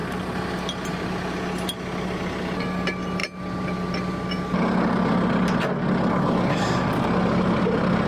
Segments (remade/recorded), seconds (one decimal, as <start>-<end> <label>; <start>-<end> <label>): 0.0-8.1 recorded